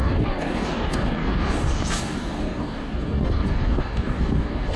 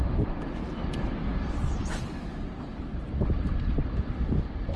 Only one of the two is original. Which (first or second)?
second